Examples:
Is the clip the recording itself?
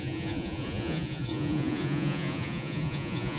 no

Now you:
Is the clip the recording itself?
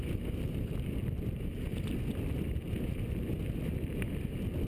yes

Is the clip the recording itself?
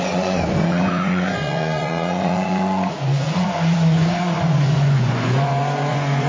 no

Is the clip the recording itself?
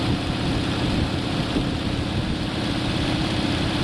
yes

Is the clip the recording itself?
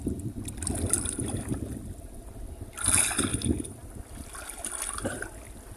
yes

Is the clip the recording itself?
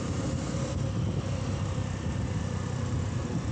yes